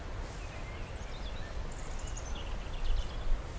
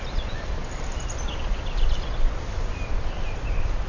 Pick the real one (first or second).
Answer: first